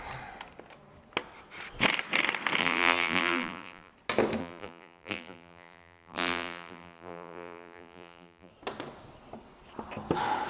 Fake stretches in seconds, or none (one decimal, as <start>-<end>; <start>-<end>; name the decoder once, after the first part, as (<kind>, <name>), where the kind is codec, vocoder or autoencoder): 2.6-3.9 (vocoder, BigVGAN v2); 4.4-8.5